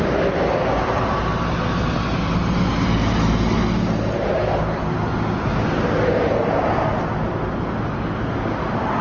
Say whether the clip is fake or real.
real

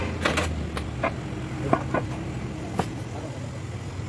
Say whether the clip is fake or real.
real